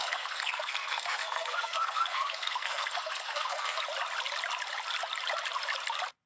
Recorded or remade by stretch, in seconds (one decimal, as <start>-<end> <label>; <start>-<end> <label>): 0.0-3.8 remade; 3.8-6.3 recorded